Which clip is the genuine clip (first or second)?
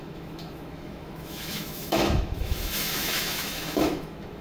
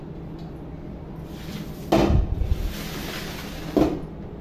second